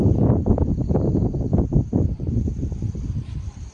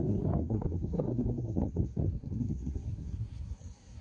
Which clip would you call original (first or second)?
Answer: first